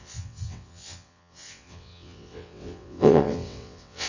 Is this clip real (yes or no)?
no